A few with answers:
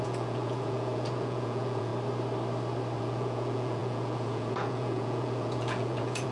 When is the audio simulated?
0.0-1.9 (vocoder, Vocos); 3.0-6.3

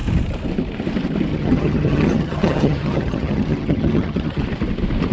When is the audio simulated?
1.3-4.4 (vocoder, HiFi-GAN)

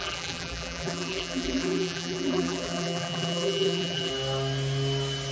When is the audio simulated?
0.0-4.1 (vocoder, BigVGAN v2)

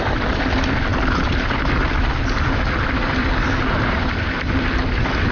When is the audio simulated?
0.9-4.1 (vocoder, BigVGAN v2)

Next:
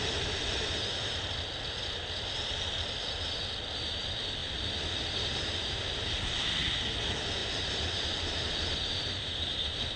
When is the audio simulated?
none

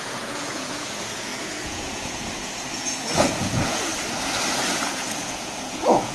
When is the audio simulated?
0.0-3.9 (vocoder, Vocos); 4.7-6.1

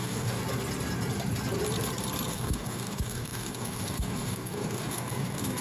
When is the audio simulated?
0.0-0.4 (codec, DAC); 2.3-5.6